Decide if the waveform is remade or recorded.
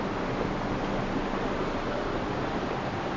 recorded